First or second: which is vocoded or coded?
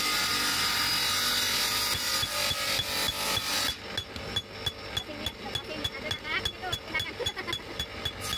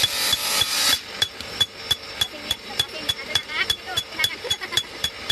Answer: second